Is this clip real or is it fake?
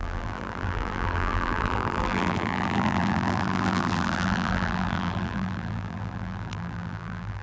fake